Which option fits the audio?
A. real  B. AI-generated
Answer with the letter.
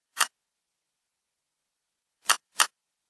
B